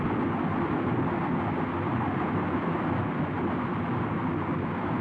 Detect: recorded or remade recorded